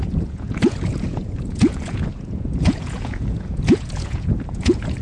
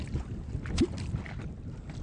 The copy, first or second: first